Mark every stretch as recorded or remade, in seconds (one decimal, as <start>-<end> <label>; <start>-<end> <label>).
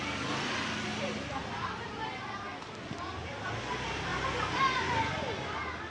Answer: 0.0-5.9 recorded